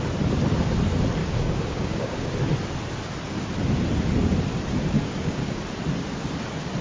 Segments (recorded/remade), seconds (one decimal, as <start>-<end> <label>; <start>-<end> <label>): 0.0-1.2 recorded; 1.2-2.3 remade; 2.3-5.0 recorded; 5.0-5.6 remade; 5.6-6.8 recorded

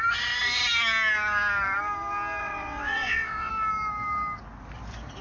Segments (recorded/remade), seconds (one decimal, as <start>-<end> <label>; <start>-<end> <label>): 0.0-2.4 recorded; 2.4-3.5 remade; 3.5-5.2 recorded

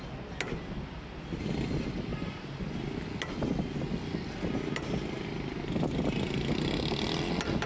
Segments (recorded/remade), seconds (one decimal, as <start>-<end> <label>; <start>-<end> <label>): 0.0-7.7 recorded

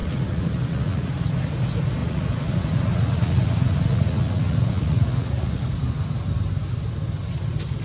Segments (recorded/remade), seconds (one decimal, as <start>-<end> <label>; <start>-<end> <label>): 0.0-1.1 remade; 1.1-2.0 recorded; 2.0-5.6 remade; 5.6-7.8 recorded